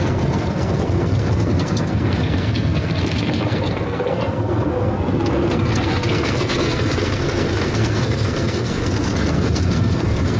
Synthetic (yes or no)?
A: yes